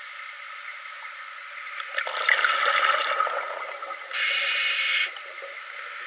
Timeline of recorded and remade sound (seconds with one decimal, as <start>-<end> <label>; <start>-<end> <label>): 0.0-6.1 recorded